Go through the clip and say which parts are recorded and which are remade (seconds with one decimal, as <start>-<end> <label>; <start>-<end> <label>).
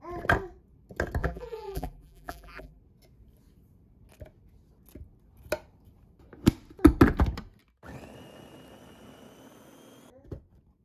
0.0-1.2 recorded; 1.2-2.8 remade; 2.8-10.8 recorded